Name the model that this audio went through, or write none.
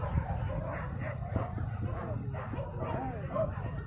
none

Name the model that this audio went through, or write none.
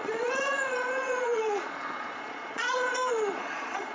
vocoder, Vocos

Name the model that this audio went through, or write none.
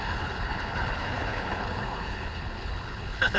codec, HILCodec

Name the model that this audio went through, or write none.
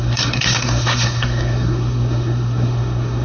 codec, SNAC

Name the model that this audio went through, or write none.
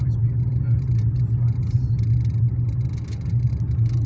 none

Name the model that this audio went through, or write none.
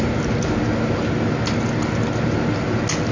none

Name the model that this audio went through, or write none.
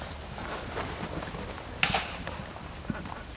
none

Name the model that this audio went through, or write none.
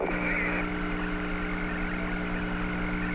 none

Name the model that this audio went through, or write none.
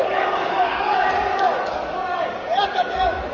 codec, DAC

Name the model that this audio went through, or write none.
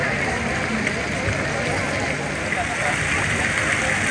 none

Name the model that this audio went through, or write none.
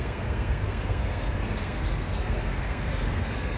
codec, SNAC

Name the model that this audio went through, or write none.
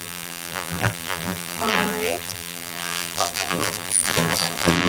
vocoder, BigVGAN v2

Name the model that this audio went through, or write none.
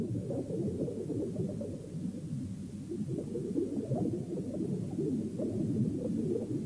none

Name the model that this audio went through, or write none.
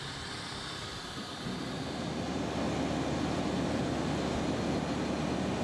none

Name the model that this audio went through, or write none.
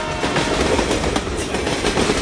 none